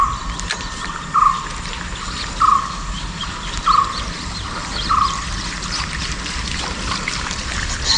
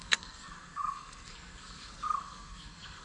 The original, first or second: first